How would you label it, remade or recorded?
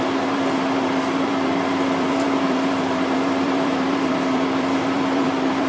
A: remade